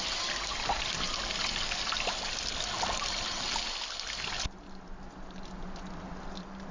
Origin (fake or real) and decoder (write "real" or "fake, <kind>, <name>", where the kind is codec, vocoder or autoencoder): real